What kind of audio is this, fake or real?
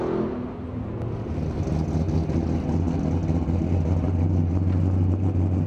real